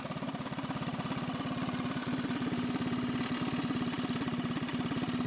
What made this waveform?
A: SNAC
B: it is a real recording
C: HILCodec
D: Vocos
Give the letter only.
B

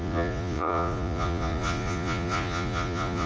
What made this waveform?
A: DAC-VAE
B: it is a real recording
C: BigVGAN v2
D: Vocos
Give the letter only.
D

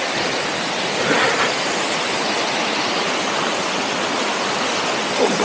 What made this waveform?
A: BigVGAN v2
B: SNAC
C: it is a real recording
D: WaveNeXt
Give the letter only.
C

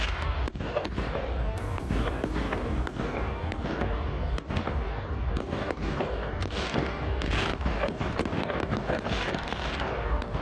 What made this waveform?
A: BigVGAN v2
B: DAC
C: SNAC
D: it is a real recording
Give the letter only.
B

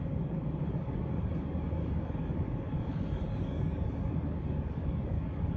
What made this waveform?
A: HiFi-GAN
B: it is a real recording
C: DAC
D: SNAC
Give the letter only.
C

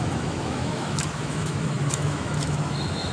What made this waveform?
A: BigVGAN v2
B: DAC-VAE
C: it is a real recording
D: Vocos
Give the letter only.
B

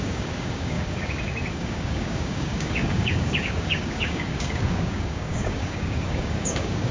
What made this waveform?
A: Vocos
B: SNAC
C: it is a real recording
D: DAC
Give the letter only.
D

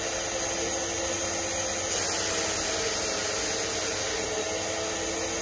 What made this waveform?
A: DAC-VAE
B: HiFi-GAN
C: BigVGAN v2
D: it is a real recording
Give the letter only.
D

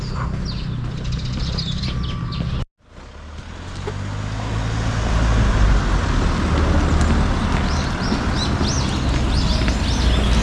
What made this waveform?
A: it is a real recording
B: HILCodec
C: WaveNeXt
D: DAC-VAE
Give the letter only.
A